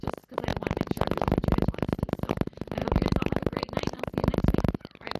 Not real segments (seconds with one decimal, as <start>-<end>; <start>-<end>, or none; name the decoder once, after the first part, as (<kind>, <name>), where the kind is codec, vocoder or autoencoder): none